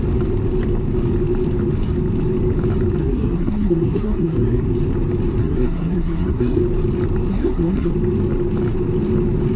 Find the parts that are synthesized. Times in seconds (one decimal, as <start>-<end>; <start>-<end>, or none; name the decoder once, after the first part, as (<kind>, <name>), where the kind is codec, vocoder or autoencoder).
3.0-4.6 (codec, SNAC); 5.4-6.6; 7.3-7.9